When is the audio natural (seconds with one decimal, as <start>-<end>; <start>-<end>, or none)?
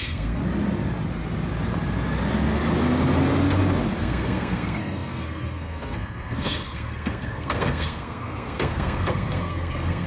0.4-4.0